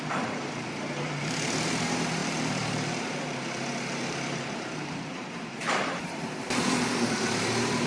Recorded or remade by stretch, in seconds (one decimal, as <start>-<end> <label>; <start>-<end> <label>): 0.0-7.9 remade